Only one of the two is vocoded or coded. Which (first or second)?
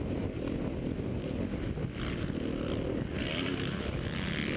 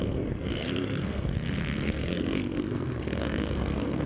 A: second